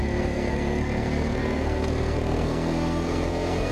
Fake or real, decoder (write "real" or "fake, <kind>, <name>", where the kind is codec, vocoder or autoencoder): fake, codec, SNAC